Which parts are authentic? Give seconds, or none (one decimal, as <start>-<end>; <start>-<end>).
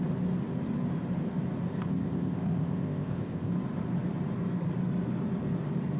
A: 0.0-1.7; 3.5-6.0